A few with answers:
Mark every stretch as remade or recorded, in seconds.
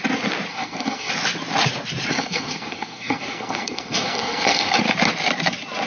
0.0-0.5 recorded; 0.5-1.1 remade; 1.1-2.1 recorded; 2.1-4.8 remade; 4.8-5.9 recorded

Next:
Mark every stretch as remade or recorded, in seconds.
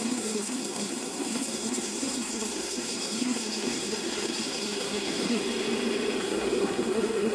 0.0-5.4 remade; 5.4-6.2 recorded; 6.2-7.3 remade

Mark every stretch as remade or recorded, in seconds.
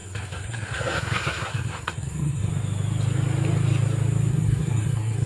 0.0-2.5 remade; 2.5-4.3 recorded; 4.3-5.3 remade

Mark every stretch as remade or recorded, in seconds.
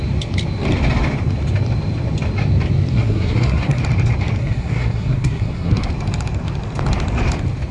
0.0-2.9 recorded; 2.9-3.8 remade; 3.8-4.4 recorded; 4.4-5.9 remade; 5.9-7.7 recorded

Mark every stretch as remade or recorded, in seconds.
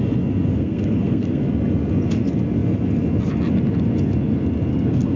0.0-0.5 recorded; 0.5-1.4 remade; 1.4-4.7 recorded; 4.7-5.2 remade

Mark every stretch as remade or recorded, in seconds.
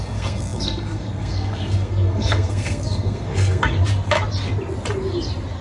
0.0-3.7 remade; 3.7-5.6 recorded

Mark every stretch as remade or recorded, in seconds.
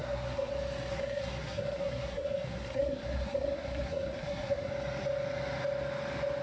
0.0-0.5 remade; 0.5-0.9 recorded; 0.9-4.7 remade; 4.7-6.4 recorded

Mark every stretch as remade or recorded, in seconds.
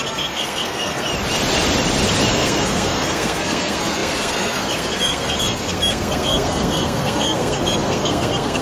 0.0-1.1 remade; 1.1-2.3 recorded; 2.3-8.6 remade